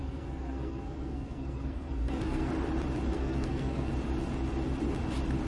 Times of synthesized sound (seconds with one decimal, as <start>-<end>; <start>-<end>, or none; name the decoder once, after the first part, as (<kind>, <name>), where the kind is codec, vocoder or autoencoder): 0.0-2.5 (codec, SNAC); 3.1-3.9